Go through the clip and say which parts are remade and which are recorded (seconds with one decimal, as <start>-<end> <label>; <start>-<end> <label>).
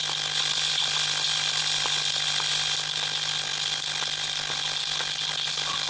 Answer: 0.0-5.9 recorded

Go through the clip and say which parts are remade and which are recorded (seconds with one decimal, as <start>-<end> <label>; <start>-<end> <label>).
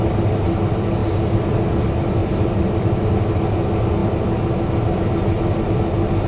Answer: 0.0-2.2 recorded; 2.2-2.8 remade; 2.8-6.3 recorded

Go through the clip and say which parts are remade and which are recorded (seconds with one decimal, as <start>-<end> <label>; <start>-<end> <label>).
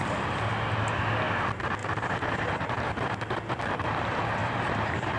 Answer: 0.0-1.8 recorded; 1.8-2.9 remade; 2.9-4.4 recorded; 4.4-5.2 remade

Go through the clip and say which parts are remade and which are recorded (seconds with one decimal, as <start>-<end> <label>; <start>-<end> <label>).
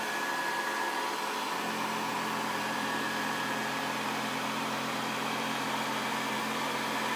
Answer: 0.0-2.1 recorded; 2.1-6.4 remade; 6.4-7.2 recorded